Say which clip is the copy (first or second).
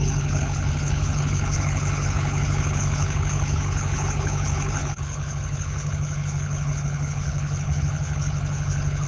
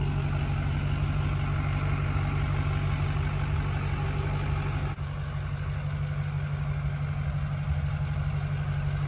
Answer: first